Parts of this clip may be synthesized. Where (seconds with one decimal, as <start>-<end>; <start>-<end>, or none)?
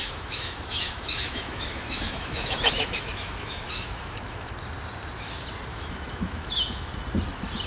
0.0-4.5; 5.7-6.9